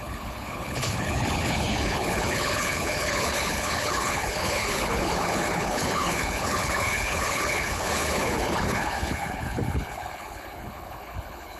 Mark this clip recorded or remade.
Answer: remade